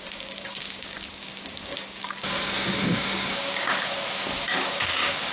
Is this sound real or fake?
fake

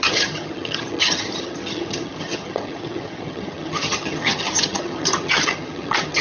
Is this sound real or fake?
fake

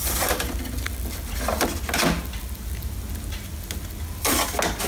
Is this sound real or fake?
real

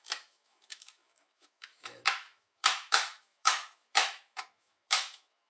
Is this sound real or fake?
fake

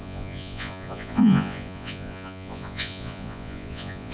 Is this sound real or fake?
fake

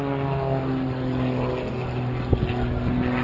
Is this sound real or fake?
real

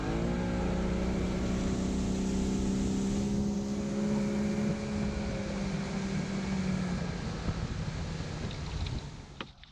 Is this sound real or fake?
real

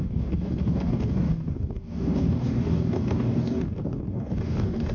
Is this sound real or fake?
fake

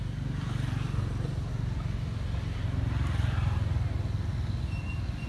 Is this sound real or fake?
real